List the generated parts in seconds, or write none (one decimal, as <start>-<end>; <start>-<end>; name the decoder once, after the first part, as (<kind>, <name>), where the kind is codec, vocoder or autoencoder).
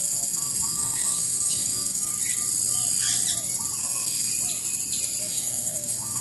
0.0-2.1 (codec, SNAC); 3.8-4.3; 5.2-6.2